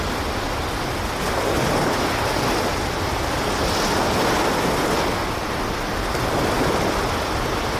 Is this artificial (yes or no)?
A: no